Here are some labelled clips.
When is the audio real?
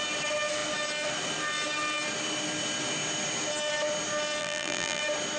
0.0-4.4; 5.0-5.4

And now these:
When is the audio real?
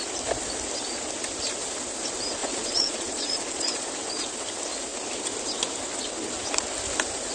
0.0-2.4; 3.9-7.3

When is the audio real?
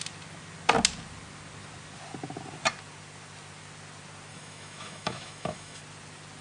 0.0-4.3; 5.8-6.4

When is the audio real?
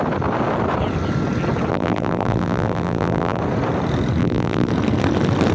0.0-1.7; 3.4-4.2; 4.7-5.5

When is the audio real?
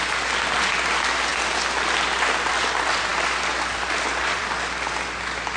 0.0-5.6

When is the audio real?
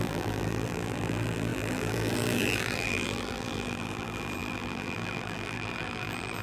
none